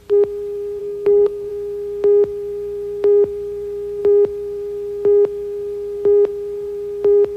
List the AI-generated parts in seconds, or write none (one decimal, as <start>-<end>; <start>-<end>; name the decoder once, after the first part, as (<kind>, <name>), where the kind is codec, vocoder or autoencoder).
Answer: 0.8-1.5 (codec, SNAC)